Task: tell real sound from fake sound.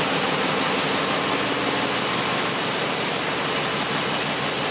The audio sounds real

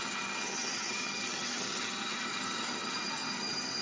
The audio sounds fake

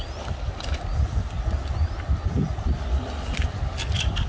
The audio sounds real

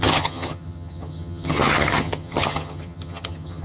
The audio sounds fake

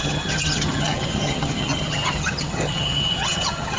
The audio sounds fake